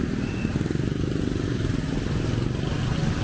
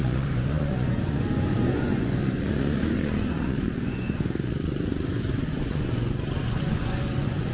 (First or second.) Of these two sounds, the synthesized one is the second